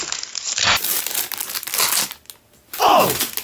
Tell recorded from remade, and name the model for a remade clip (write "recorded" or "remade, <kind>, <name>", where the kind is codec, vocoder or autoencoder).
recorded